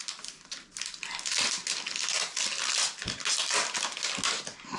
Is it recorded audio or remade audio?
recorded